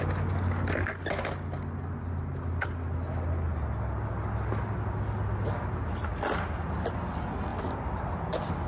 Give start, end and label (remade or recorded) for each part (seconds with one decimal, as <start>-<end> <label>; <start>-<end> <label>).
0.0-7.5 recorded; 7.5-8.1 remade; 8.1-8.7 recorded